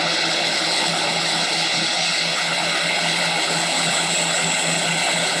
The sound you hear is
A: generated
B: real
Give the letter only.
A